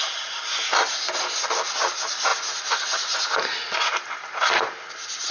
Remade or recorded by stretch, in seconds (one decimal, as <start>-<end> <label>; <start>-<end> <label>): 0.0-5.3 recorded